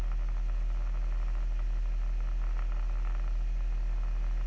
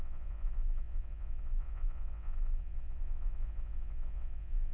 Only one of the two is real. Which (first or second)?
first